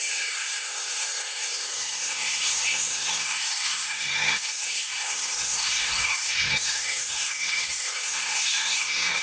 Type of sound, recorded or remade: remade